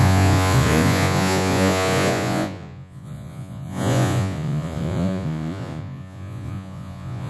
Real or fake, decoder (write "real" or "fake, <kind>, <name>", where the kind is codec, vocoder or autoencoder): fake, vocoder, Vocos